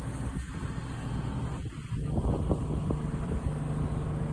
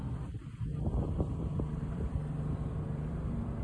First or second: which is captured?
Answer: first